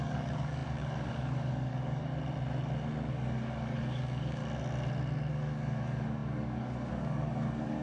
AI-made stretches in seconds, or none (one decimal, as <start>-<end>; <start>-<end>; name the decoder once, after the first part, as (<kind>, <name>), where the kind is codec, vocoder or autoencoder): 0.0-2.1 (codec, DAC); 3.1-4.4; 5.3-7.8